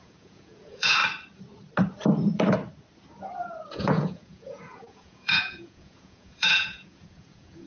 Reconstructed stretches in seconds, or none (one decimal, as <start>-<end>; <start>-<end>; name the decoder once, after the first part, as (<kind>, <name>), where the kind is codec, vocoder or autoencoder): 0.0-1.0 (vocoder, Vocos); 3.7-7.7